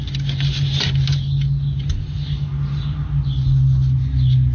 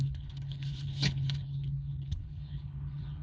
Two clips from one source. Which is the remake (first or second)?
second